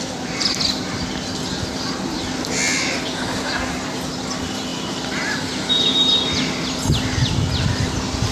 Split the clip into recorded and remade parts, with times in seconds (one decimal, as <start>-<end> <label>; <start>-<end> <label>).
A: 0.0-8.3 recorded